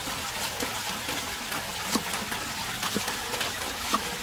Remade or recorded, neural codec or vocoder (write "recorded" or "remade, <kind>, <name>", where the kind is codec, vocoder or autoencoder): recorded